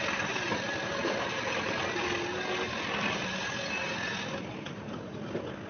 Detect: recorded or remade recorded